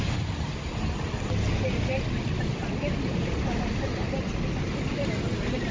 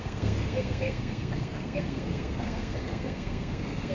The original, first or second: first